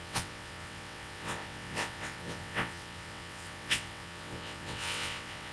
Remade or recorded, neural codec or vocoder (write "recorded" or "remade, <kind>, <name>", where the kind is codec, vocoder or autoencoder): remade, vocoder, WaveNeXt